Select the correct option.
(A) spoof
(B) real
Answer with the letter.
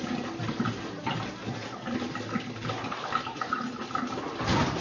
B